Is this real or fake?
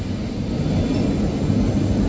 real